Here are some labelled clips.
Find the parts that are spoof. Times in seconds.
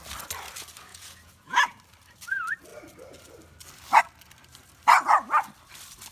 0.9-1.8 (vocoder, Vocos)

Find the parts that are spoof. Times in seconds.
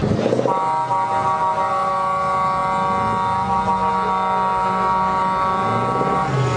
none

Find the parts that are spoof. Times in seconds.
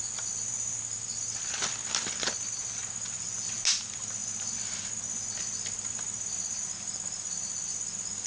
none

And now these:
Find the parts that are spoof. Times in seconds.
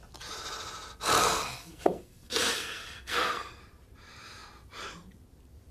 1.2-3.6 (codec, SNAC)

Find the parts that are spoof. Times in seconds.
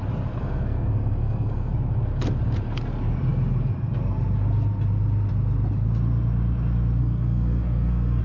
0.4-1.7 (codec, SNAC); 7.0-8.2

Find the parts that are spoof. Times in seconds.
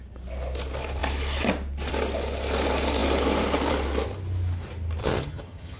5.0-5.8 (vocoder, HiFi-GAN)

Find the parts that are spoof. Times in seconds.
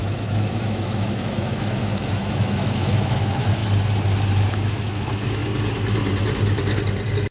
0.0-3.6 (autoencoder, DAC-VAE); 4.5-5.4